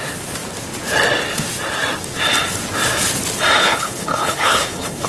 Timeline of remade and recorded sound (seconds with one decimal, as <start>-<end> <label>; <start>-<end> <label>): 0.0-3.6 recorded; 3.6-5.1 remade